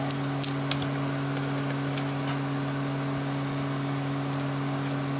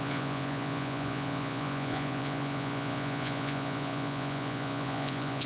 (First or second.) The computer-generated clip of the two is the second